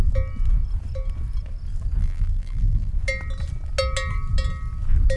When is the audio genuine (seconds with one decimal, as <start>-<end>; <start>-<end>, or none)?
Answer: 0.0-2.0; 2.9-5.2